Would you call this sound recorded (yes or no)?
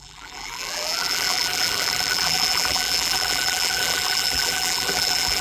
no